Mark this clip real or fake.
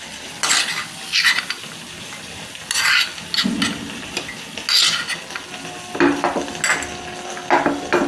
real